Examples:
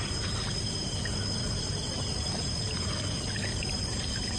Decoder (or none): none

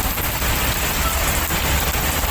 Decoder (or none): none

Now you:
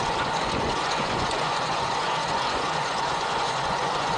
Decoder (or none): vocoder, Vocos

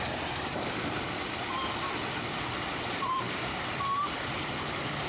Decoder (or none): none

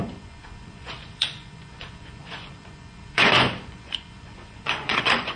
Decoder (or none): vocoder, Vocos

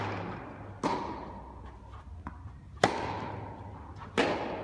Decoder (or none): none